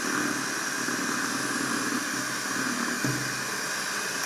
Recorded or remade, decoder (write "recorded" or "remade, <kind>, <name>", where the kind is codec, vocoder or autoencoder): recorded